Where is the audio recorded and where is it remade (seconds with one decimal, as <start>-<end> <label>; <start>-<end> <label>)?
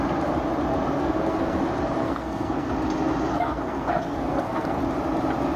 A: 0.0-1.0 recorded; 1.0-1.6 remade; 1.6-2.0 recorded; 2.0-2.7 remade; 2.7-3.3 recorded; 3.3-4.8 remade; 4.8-5.6 recorded